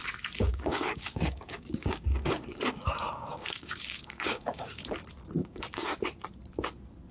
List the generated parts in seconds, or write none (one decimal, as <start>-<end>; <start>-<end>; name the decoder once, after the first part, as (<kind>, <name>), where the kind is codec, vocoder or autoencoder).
0.5-4.8 (codec, DAC); 5.4-5.9